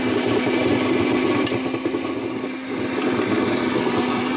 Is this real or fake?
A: real